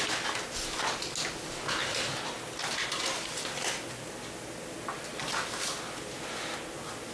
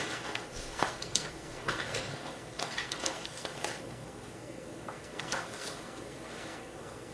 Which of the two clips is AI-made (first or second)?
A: second